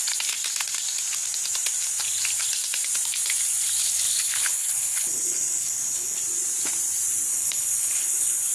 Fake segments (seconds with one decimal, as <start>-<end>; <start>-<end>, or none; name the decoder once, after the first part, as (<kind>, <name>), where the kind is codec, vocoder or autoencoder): 3.8-6.2 (codec, HILCodec); 7.3-8.5